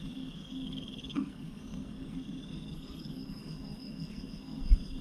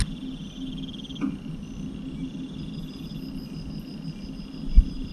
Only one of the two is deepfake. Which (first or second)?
first